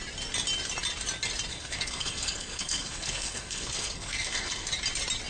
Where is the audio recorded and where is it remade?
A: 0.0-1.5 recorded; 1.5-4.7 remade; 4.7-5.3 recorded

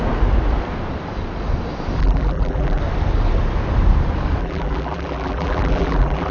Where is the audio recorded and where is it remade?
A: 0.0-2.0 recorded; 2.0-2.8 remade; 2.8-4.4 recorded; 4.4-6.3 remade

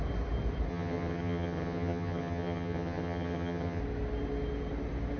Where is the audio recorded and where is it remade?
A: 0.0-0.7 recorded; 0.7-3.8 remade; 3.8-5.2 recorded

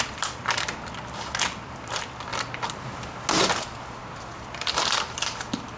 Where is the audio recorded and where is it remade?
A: 0.0-2.3 remade; 2.3-3.4 recorded; 3.4-5.8 remade

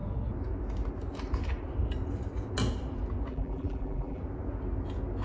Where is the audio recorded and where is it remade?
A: 0.0-3.3 recorded; 3.3-4.2 remade; 4.2-5.2 recorded